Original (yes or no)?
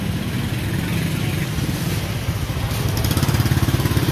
yes